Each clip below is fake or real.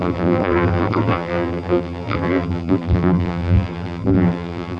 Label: fake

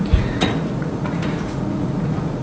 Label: fake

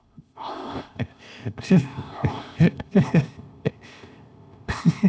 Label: fake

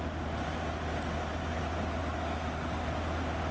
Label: real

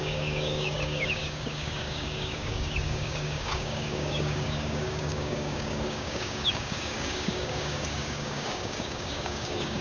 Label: fake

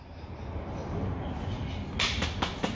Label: real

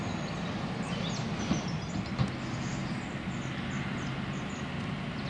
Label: real